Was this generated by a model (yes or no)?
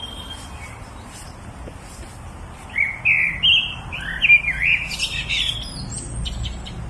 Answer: no